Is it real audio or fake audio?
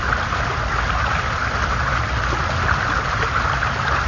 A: real